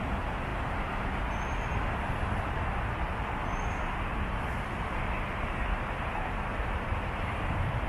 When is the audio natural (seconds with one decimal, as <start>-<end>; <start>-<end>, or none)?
0.0-7.9

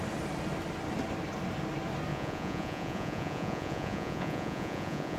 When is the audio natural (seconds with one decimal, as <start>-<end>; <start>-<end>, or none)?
0.0-2.1

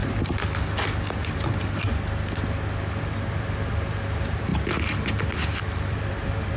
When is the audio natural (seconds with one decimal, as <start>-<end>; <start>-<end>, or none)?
0.0-3.0; 4.5-5.6

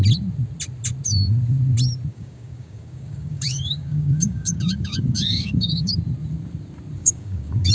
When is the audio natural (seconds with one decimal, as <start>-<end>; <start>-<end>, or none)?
0.0-2.1; 5.9-7.0

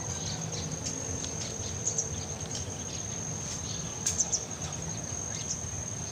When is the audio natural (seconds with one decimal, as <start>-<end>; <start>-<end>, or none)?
0.0-6.1

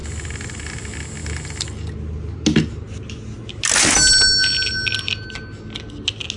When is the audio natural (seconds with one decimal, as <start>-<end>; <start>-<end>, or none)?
0.0-6.4

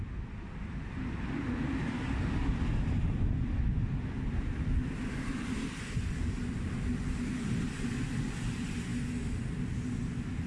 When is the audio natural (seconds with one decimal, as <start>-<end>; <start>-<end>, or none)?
0.0-10.5